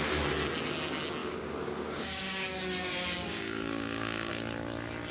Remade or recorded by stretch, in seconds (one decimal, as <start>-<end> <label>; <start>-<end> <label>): 0.0-1.2 recorded; 1.2-4.3 remade; 4.3-5.1 recorded